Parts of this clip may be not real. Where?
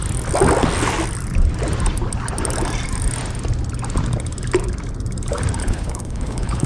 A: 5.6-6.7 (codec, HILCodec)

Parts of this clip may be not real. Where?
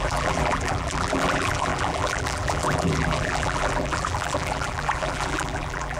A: 0.0-6.0 (vocoder, BigVGAN v2)